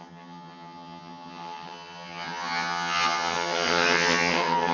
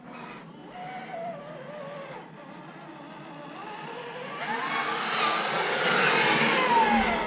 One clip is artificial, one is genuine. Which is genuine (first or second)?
second